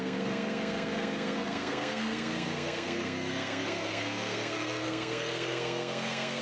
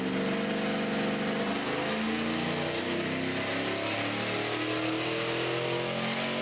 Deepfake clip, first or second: first